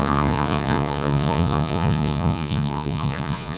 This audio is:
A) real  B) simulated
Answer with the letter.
B